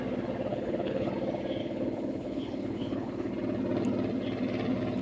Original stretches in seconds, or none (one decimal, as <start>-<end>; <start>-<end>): 0.0-0.5; 1.1-1.6; 3.3-5.0